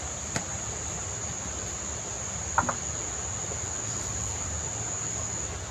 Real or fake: real